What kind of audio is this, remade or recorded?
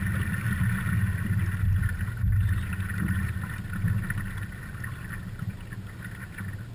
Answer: recorded